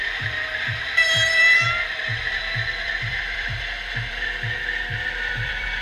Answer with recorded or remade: remade